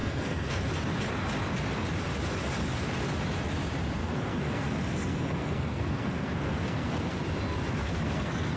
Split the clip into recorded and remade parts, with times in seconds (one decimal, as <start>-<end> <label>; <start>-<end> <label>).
0.0-0.6 remade; 0.6-4.0 recorded; 4.0-7.2 remade; 7.2-7.8 recorded; 7.8-8.6 remade